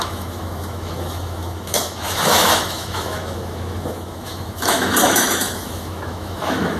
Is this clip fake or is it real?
fake